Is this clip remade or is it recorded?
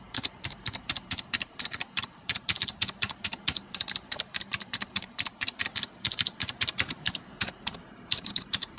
remade